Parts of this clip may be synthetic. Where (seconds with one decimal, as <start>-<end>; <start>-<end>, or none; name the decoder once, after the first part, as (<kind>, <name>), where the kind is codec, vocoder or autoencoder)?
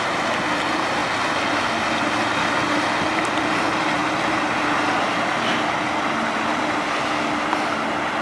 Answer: none